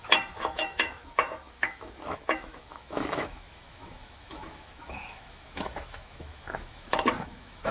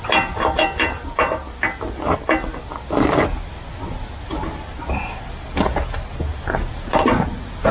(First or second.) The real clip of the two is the second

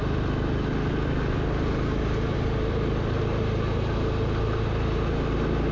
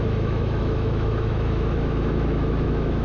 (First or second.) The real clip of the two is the first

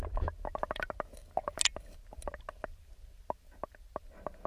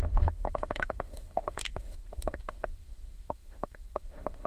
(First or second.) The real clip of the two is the first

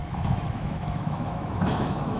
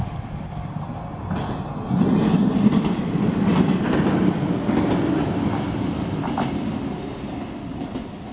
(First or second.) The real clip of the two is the second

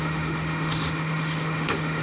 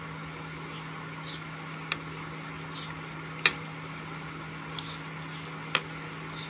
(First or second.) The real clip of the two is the second